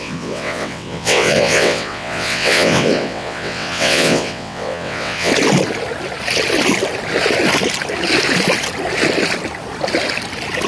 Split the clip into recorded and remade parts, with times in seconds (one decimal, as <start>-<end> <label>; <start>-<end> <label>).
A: 0.0-5.3 remade; 5.3-10.7 recorded